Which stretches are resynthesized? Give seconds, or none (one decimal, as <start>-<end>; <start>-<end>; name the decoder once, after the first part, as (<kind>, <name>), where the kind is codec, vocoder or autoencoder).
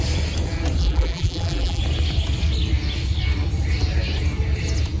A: 0.8-1.8 (vocoder, BigVGAN v2)